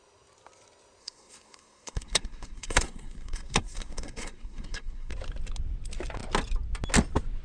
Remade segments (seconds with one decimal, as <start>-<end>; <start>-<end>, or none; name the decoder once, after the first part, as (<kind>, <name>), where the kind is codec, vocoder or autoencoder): 1.0-5.1 (codec, SNAC)